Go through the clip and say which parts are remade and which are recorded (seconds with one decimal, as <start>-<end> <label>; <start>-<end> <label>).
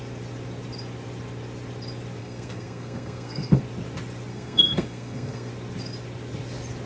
0.0-2.2 recorded; 2.2-3.6 remade; 3.6-4.3 recorded; 4.3-5.5 remade; 5.5-6.9 recorded